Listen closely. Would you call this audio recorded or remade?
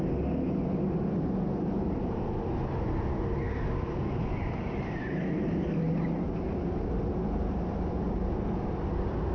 recorded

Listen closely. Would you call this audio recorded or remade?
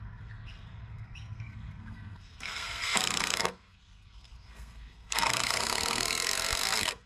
remade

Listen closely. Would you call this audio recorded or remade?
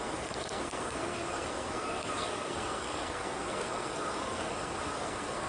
remade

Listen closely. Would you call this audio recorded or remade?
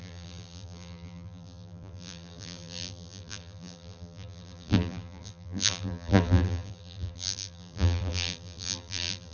remade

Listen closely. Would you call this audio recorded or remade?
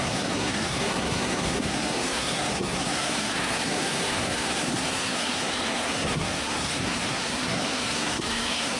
remade